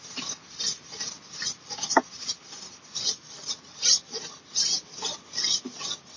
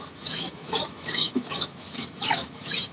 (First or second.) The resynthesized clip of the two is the second